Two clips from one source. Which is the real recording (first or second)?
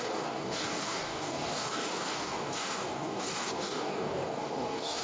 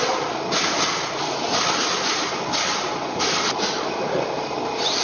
second